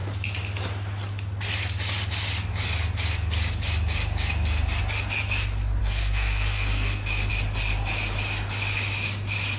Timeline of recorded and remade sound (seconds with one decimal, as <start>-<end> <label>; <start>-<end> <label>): 0.0-5.8 recorded; 5.8-7.3 remade; 7.3-9.6 recorded